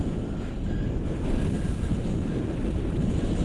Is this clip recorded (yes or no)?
yes